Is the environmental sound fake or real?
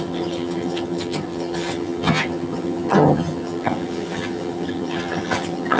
fake